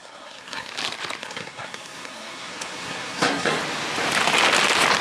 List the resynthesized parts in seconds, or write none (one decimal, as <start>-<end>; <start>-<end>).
0.0-0.7; 1.2-3.6